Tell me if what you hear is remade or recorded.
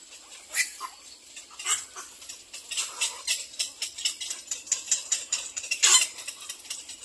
recorded